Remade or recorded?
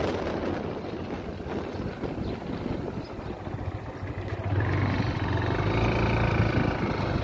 recorded